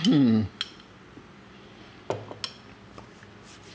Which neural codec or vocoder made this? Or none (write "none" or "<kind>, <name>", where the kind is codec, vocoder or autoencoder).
none